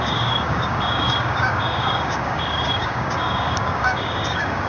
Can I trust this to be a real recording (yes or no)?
no